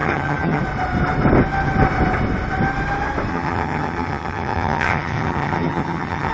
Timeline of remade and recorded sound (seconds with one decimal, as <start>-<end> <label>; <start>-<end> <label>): 0.0-0.6 remade; 0.6-3.3 recorded; 3.3-6.3 remade